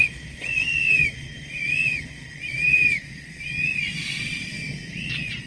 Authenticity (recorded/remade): remade